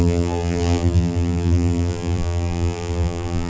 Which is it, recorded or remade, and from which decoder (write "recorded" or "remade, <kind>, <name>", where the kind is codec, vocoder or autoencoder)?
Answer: remade, vocoder, BigVGAN v2